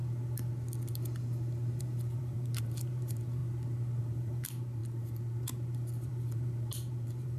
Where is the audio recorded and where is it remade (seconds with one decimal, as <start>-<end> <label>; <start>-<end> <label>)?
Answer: 0.0-1.8 recorded; 1.8-3.4 remade; 3.4-4.0 recorded; 4.0-7.4 remade

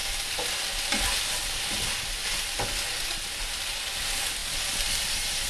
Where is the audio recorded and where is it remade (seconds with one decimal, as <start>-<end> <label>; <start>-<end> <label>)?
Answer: 0.0-5.5 recorded

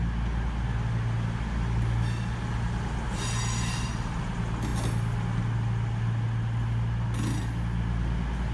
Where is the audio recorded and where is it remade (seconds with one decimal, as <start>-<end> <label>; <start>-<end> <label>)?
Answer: 0.0-8.5 recorded

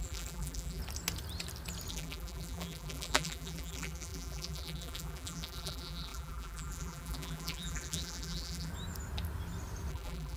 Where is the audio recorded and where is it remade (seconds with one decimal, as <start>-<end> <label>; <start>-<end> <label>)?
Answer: 0.0-0.8 remade; 0.8-1.9 recorded; 1.9-8.7 remade; 8.7-9.9 recorded; 9.9-10.4 remade

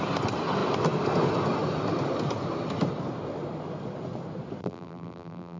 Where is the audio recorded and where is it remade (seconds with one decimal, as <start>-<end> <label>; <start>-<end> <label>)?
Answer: 0.0-4.6 recorded; 4.6-5.6 remade

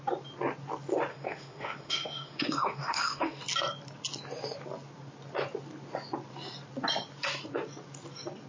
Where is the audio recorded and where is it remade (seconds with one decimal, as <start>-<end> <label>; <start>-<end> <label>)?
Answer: 0.0-1.1 recorded; 1.1-3.4 remade; 3.4-8.5 recorded